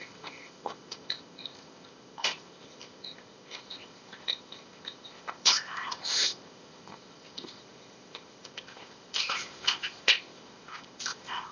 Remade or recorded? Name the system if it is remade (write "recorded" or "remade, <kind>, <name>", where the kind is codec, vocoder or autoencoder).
remade, codec, ZipCodec